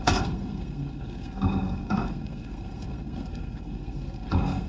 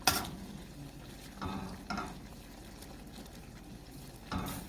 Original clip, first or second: second